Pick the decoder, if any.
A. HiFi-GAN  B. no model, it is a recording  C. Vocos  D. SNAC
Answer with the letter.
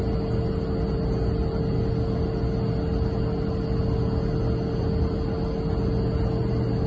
B